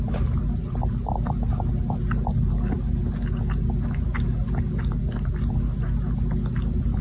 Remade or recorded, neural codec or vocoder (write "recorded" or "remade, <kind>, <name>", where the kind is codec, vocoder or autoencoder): recorded